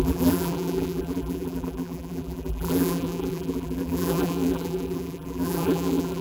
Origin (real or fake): fake